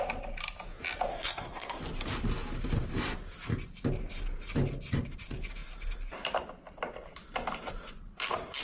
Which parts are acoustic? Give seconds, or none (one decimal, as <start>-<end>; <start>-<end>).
0.0-1.1; 1.8-8.6